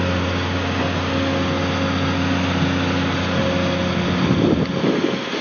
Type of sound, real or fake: real